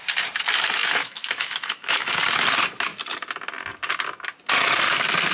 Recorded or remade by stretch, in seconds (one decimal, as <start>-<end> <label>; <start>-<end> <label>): 0.0-0.8 recorded; 0.8-2.1 remade; 2.1-5.3 recorded